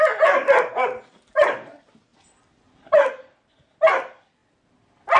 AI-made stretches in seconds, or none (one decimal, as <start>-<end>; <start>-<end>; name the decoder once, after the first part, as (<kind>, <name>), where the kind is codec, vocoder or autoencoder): 0.0-4.4 (vocoder, BigVGAN v2)